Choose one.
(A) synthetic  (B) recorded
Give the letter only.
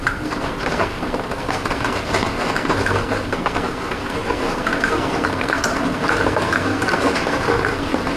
A